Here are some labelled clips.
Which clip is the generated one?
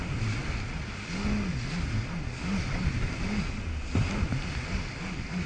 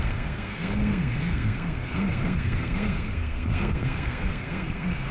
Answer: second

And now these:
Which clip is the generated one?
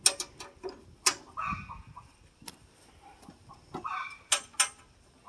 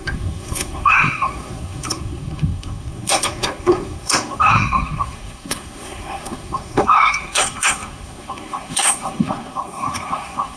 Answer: second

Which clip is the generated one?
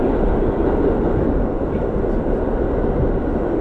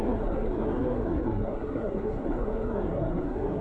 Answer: second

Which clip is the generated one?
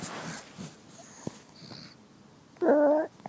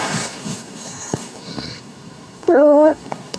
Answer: second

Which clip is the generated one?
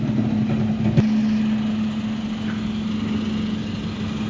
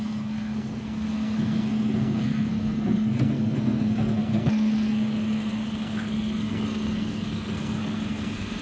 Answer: second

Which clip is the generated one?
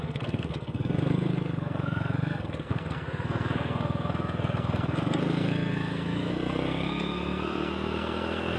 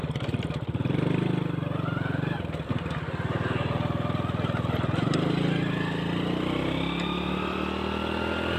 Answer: first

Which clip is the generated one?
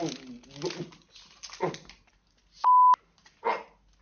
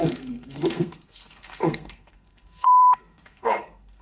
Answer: second